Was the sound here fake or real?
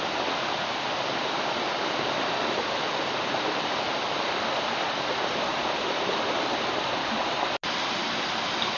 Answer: real